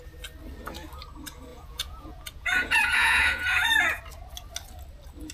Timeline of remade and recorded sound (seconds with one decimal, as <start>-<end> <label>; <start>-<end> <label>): 0.0-1.5 recorded; 1.5-4.0 remade; 4.0-5.3 recorded